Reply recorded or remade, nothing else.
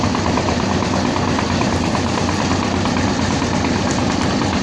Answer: recorded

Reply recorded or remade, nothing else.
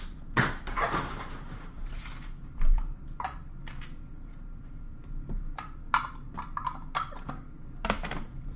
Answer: remade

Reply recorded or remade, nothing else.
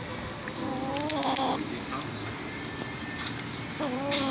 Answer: recorded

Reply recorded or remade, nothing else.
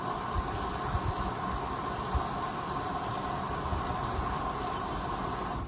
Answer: recorded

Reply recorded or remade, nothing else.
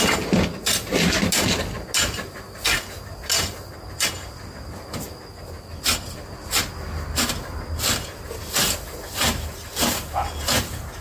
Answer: recorded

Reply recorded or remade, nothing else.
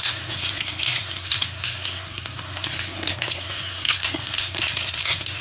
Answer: remade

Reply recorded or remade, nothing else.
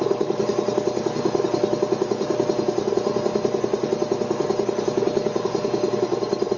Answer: recorded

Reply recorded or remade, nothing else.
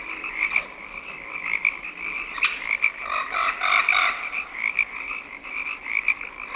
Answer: remade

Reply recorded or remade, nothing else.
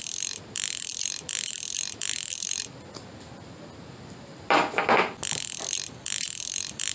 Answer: recorded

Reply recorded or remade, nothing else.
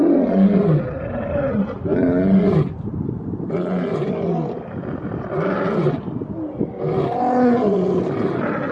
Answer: recorded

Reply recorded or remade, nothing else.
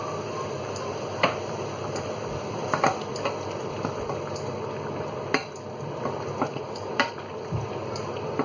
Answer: remade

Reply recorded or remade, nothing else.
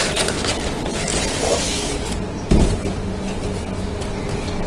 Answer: recorded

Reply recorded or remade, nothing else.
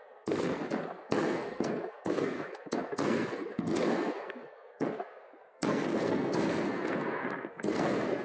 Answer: remade